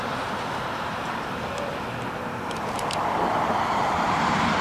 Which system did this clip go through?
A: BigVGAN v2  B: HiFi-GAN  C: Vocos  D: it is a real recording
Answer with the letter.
A